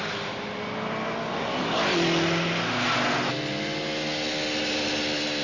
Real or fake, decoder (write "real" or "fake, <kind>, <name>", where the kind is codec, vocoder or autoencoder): real